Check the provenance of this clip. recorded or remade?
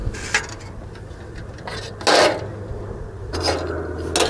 recorded